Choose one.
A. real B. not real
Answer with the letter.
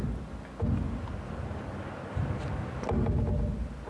A